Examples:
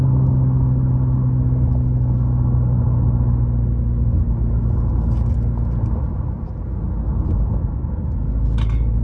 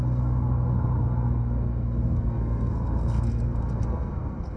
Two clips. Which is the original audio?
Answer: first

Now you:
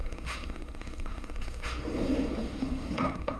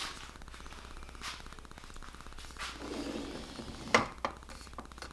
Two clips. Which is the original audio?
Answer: second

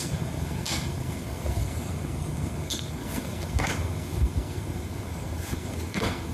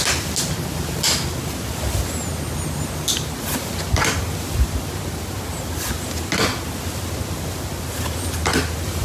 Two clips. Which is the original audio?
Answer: second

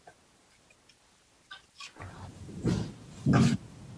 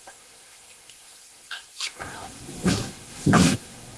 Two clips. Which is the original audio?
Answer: first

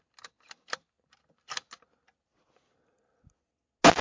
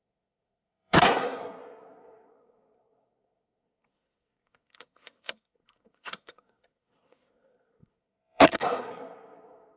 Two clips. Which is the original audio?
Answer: first